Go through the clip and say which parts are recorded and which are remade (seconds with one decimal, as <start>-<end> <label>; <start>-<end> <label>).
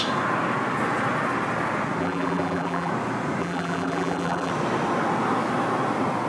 0.0-2.0 recorded; 2.0-2.9 remade; 2.9-3.4 recorded; 3.4-4.5 remade; 4.5-6.3 recorded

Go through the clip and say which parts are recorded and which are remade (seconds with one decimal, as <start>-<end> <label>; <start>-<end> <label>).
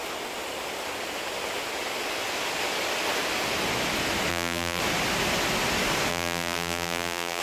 0.0-4.3 recorded; 4.3-4.8 remade; 4.8-6.1 recorded; 6.1-7.4 remade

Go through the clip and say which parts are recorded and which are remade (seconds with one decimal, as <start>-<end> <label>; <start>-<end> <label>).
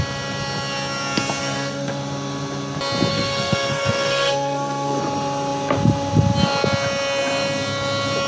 0.0-1.4 recorded; 1.4-1.9 remade; 1.9-3.1 recorded; 3.1-5.0 remade; 5.0-8.3 recorded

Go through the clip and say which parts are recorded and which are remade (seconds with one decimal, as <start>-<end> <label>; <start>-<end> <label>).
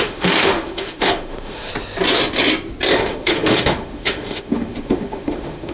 0.0-1.7 remade; 1.7-2.9 recorded; 2.9-5.7 remade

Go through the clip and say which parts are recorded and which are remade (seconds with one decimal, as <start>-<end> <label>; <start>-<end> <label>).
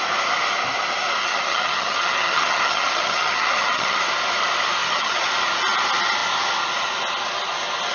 0.0-1.2 recorded; 1.2-4.0 remade; 4.0-4.8 recorded; 4.8-5.3 remade; 5.3-7.9 recorded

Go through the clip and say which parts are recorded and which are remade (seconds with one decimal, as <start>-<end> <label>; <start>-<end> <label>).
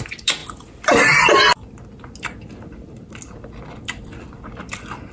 0.0-5.1 recorded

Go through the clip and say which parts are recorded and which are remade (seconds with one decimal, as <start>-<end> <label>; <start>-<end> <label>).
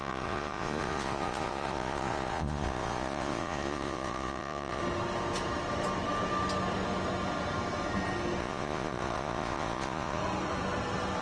0.0-4.8 remade; 4.8-8.4 recorded; 8.4-10.2 remade; 10.2-11.2 recorded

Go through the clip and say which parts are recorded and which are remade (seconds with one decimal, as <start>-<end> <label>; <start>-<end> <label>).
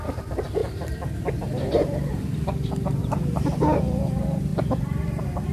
0.0-0.6 recorded; 0.6-2.2 remade; 2.2-3.0 recorded; 3.0-3.6 remade; 3.6-5.5 recorded